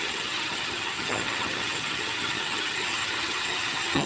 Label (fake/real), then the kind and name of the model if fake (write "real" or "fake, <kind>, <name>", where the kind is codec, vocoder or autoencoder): fake, vocoder, HiFi-GAN